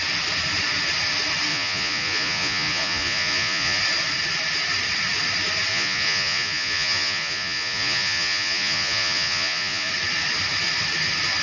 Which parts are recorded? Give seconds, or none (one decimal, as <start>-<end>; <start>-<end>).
0.0-1.5; 3.8-5.7; 9.9-11.4